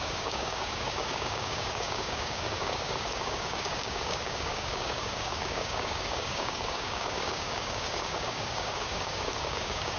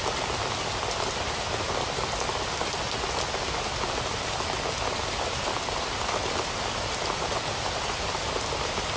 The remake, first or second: first